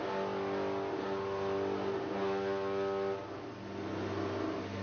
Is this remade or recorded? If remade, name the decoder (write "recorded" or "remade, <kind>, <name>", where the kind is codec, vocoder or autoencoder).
recorded